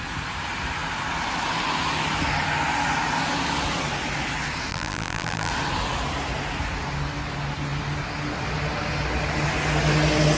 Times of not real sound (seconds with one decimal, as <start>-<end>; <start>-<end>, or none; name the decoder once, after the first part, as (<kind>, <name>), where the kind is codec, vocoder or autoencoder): 4.7-5.5 (vocoder, BigVGAN v2)